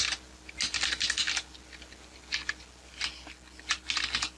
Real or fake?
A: real